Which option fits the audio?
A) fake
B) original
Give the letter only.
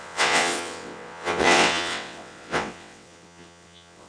A